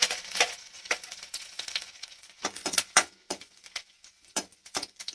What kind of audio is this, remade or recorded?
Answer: remade